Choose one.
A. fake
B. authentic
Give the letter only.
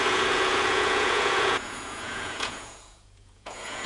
A